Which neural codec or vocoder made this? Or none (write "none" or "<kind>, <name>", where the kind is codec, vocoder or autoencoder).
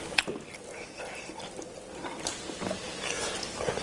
none